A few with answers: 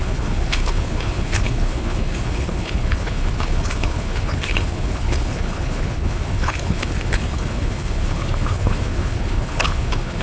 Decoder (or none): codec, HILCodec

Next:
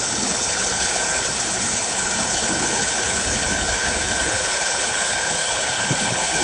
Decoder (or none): codec, HILCodec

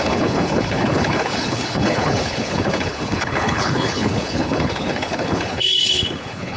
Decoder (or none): codec, HILCodec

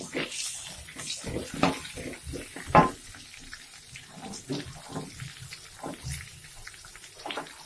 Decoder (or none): none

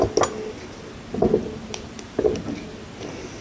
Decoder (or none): none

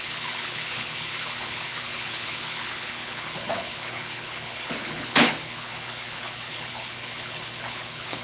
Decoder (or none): codec, HILCodec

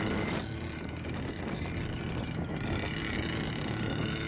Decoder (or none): none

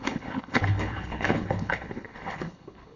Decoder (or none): codec, HILCodec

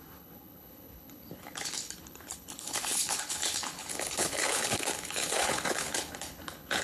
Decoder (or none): codec, HILCodec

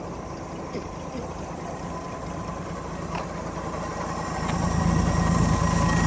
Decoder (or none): none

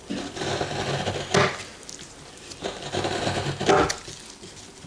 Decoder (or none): none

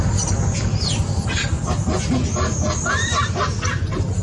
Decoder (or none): none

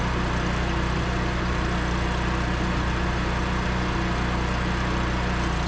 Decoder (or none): none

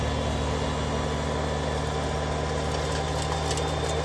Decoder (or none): none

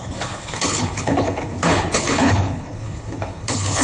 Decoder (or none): codec, HILCodec